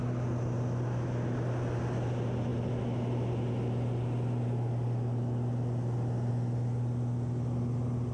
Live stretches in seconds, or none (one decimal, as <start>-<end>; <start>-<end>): 0.0-8.1